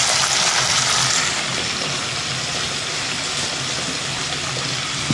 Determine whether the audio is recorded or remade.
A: recorded